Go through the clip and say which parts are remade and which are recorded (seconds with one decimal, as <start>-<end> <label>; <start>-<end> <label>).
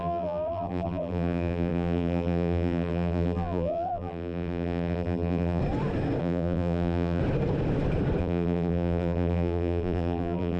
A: 0.0-5.6 remade; 5.6-6.2 recorded; 6.2-7.2 remade; 7.2-8.2 recorded; 8.2-10.6 remade